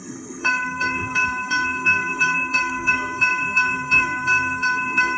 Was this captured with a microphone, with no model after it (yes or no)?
no